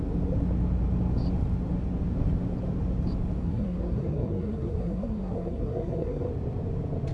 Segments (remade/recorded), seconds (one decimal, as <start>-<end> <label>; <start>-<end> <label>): 0.0-3.4 recorded; 3.4-6.3 remade; 6.3-7.1 recorded

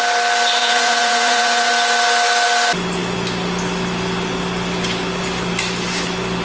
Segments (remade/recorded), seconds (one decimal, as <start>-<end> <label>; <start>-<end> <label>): 0.0-0.6 recorded; 0.6-1.7 remade; 1.7-6.4 recorded

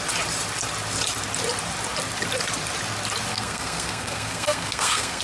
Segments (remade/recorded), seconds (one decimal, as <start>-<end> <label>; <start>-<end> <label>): 0.0-3.3 recorded; 3.3-5.2 remade

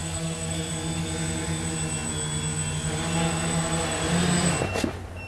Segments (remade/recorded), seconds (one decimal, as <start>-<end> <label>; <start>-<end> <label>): 0.0-0.7 remade; 0.7-5.3 recorded

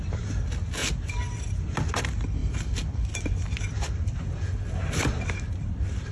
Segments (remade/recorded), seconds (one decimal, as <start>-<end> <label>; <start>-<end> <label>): 0.0-2.4 recorded; 2.4-6.1 remade

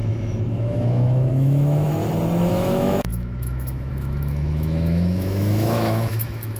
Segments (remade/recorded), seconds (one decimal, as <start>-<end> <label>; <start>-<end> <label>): 0.0-1.9 remade; 1.9-2.5 recorded; 2.5-6.6 remade

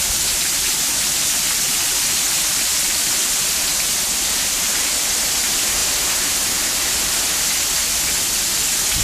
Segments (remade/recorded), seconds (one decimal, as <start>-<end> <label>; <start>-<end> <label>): 0.0-9.0 recorded

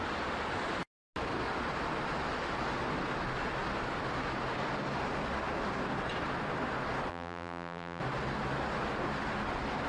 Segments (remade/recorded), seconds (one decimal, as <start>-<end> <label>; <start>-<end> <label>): 0.0-7.1 recorded; 7.1-8.0 remade; 8.0-9.9 recorded